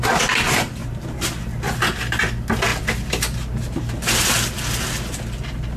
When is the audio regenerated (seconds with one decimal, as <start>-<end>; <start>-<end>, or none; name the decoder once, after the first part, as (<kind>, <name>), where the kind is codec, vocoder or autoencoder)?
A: none